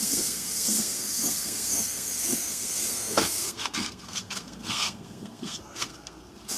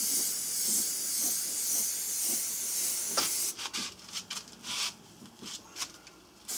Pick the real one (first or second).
second